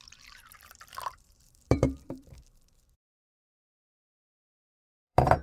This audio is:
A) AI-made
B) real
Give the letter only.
A